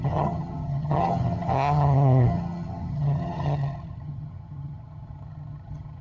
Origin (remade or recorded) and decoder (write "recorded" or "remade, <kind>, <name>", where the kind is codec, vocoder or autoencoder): remade, vocoder, HiFi-GAN